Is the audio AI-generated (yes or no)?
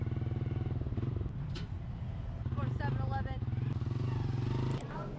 no